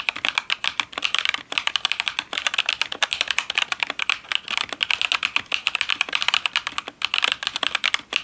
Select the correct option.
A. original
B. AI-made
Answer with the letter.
A